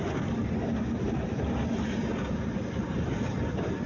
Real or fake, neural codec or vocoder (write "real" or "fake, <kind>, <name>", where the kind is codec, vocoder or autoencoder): real